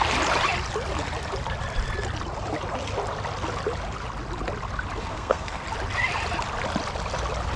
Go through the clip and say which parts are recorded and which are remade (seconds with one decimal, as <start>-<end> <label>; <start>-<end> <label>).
0.0-5.0 recorded; 5.0-5.6 remade; 5.6-7.6 recorded